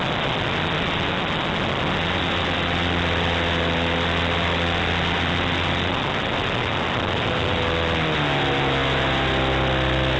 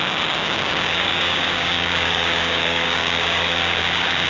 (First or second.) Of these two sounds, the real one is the first